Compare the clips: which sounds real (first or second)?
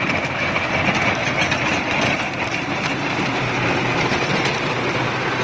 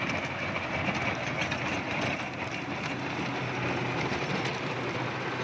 second